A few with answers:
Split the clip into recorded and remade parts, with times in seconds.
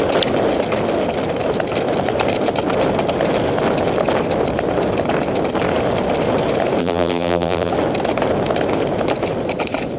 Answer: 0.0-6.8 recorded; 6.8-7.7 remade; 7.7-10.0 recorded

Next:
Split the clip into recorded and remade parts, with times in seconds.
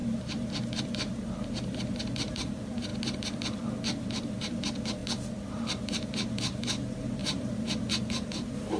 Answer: 0.0-2.9 remade; 2.9-4.0 recorded; 4.0-5.0 remade; 5.0-5.5 recorded; 5.5-8.8 remade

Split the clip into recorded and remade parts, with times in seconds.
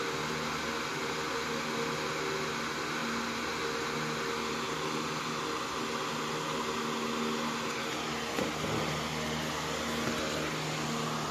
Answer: 0.0-11.3 recorded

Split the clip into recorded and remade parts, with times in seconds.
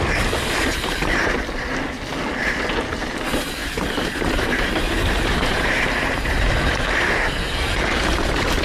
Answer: 0.0-3.6 recorded; 3.6-6.5 remade; 6.5-8.6 recorded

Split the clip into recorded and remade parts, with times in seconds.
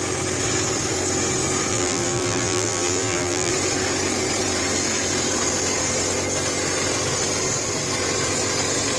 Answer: 0.0-1.7 recorded; 1.7-3.5 remade; 3.5-9.0 recorded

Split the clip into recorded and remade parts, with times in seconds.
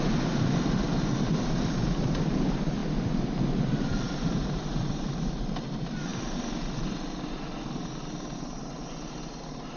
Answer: 0.0-2.8 recorded; 2.8-4.3 remade; 4.3-9.8 recorded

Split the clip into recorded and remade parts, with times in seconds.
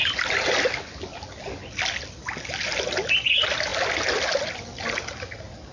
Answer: 0.0-5.7 recorded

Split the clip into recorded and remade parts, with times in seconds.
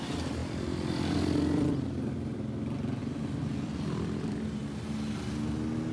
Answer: 0.0-0.4 recorded; 0.4-1.7 remade; 1.7-3.0 recorded; 3.0-4.6 remade; 4.6-5.9 recorded